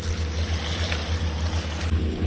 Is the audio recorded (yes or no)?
yes